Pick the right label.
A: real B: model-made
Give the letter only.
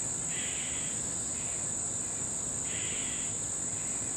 A